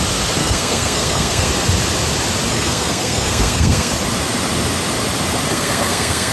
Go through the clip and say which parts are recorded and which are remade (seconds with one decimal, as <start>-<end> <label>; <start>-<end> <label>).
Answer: 0.0-0.4 recorded; 0.4-1.5 remade; 1.5-2.5 recorded; 2.5-3.9 remade; 3.9-5.5 recorded; 5.5-6.3 remade

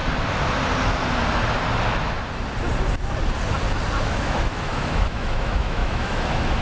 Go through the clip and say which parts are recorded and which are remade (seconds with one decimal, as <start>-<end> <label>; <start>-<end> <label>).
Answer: 0.0-4.0 recorded; 4.0-6.6 remade